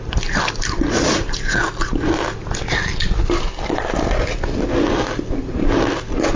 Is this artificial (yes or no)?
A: no